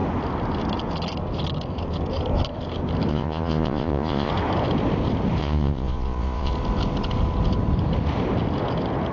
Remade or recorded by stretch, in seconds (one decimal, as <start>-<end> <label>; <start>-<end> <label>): 0.0-3.1 recorded; 3.1-4.3 remade; 4.3-5.4 recorded; 5.4-6.5 remade; 6.5-9.1 recorded